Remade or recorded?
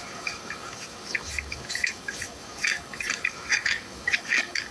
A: remade